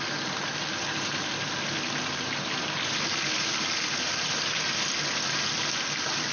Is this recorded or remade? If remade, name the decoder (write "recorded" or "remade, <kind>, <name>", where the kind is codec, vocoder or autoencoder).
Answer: recorded